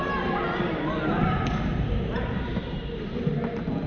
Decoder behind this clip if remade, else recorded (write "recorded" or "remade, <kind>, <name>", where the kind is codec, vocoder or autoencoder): remade, vocoder, BigVGAN v2